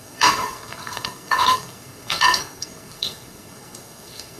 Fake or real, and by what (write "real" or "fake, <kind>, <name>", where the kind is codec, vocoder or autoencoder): fake, codec, SNAC